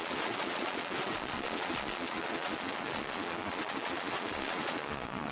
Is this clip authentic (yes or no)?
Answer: no